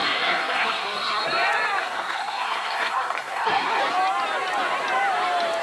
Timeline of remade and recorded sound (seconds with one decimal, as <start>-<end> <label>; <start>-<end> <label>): 0.0-1.2 remade; 1.2-1.8 recorded; 1.8-3.8 remade; 3.8-5.6 recorded